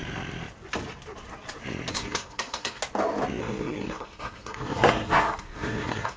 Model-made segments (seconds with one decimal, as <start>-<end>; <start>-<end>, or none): 1.9-2.8; 3.4-6.2